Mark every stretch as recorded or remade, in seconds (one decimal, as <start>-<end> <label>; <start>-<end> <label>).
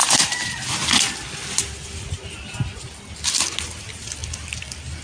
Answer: 0.0-5.0 recorded